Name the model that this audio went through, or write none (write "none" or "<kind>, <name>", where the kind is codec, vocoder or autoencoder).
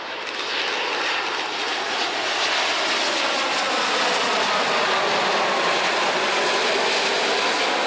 none